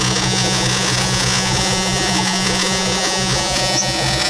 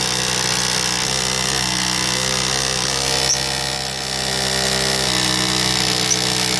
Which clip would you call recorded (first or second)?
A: second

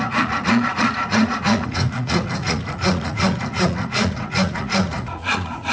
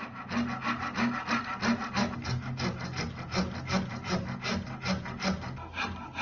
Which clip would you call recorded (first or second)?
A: second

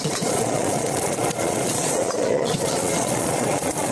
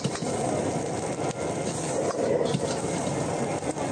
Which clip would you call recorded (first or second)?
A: second